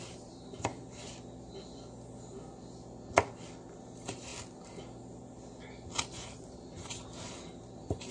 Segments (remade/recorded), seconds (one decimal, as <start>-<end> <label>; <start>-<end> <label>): 0.0-0.7 remade; 0.7-3.8 recorded; 3.8-4.3 remade; 4.3-6.0 recorded; 6.0-8.1 remade

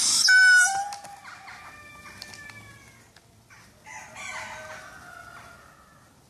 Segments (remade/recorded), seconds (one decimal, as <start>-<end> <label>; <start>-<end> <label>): 0.0-6.3 recorded